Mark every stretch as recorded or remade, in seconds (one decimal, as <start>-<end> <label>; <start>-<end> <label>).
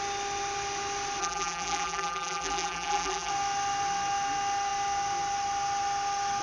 0.0-1.2 recorded; 1.2-3.3 remade; 3.3-6.4 recorded